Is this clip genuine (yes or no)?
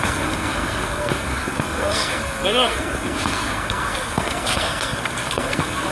no